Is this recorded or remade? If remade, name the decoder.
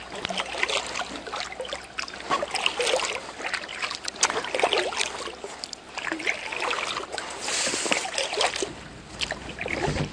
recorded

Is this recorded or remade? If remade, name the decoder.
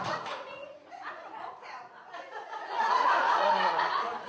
remade, vocoder, Vocos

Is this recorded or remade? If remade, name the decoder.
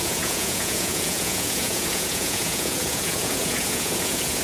remade, vocoder, Vocos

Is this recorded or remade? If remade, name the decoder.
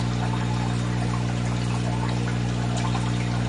recorded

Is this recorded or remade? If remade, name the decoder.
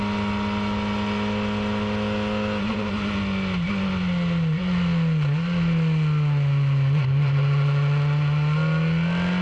recorded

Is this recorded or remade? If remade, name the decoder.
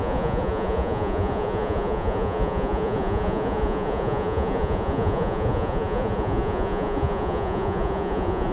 remade, vocoder, Vocos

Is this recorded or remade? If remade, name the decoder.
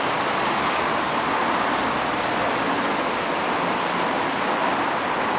recorded